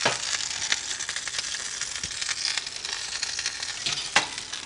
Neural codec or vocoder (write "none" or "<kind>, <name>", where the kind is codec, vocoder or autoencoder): none